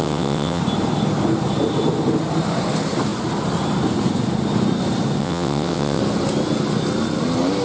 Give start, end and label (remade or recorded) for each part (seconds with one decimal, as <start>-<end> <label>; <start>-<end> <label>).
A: 0.0-0.6 remade; 0.6-5.2 recorded; 5.2-6.0 remade; 6.0-7.6 recorded